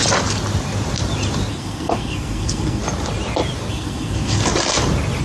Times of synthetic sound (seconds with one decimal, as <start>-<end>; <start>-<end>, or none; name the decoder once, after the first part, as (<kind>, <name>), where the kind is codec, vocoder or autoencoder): 1.5-2.8 (codec, SNAC); 3.7-4.4